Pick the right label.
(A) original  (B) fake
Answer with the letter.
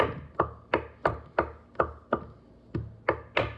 A